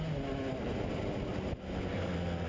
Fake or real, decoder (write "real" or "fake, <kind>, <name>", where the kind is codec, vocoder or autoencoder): real